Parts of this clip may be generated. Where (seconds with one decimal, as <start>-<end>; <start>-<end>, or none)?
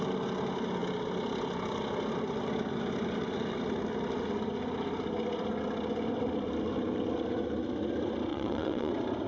8.3-8.9